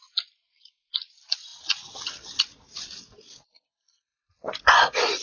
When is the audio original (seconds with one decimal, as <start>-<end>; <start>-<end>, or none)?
0.0-5.2